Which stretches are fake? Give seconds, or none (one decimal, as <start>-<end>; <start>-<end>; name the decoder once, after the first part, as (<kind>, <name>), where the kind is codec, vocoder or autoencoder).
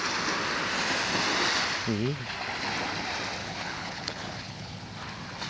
3.4-4.8 (codec, HILCodec)